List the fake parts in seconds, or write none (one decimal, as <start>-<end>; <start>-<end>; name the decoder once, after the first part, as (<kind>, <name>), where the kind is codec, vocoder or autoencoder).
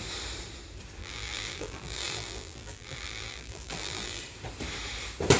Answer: 1.0-4.2 (vocoder, BigVGAN v2)